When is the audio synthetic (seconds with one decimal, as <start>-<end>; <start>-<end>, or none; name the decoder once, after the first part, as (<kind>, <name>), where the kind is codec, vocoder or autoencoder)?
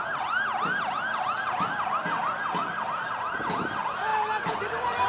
none